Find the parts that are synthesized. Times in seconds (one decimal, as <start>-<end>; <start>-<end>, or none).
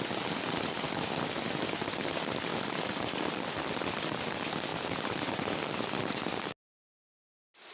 4.7-5.3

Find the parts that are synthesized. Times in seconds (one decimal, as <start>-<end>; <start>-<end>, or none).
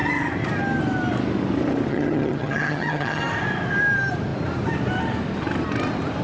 1.9-3.2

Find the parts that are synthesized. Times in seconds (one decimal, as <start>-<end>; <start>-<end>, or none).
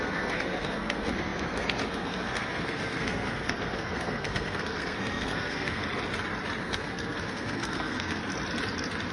0.0-5.8; 6.6-8.2